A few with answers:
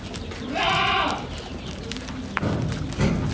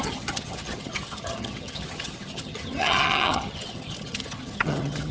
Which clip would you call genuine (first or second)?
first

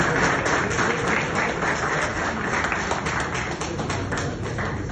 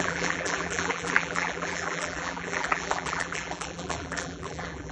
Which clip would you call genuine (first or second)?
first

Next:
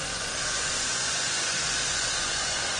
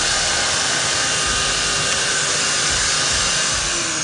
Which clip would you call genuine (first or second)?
second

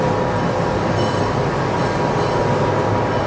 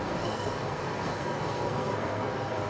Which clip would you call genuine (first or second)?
first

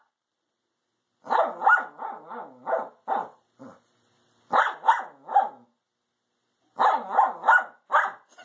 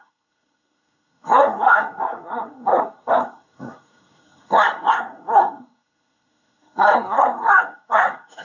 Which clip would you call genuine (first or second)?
first